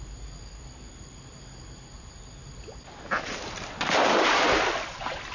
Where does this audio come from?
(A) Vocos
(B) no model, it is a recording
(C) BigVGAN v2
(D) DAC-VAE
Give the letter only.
B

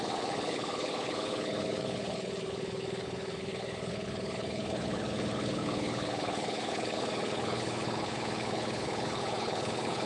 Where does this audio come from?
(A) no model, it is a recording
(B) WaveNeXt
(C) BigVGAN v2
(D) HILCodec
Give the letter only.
D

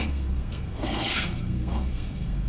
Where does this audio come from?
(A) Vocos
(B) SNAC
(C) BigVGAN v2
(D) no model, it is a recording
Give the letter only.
B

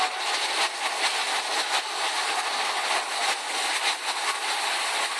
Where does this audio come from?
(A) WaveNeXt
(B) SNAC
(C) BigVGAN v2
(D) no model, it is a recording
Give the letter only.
D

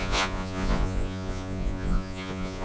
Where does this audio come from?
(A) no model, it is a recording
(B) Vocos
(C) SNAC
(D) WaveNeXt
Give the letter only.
B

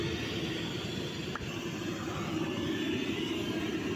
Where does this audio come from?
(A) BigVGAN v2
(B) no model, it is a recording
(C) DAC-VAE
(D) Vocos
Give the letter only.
B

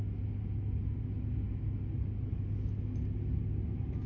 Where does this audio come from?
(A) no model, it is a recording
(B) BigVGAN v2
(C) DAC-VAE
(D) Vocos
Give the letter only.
A